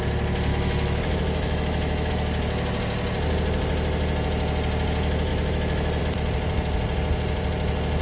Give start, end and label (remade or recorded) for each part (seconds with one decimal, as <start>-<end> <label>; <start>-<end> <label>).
0.0-0.5 recorded; 0.5-2.1 remade; 2.1-5.3 recorded; 5.3-6.0 remade; 6.0-8.0 recorded